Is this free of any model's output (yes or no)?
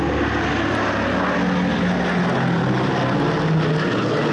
yes